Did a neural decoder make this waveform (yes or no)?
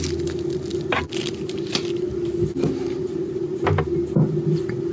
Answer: no